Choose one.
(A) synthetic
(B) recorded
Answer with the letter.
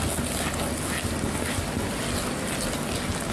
B